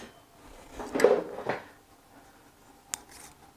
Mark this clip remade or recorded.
recorded